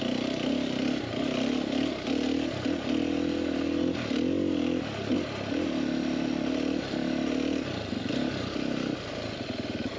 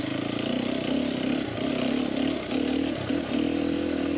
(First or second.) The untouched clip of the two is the first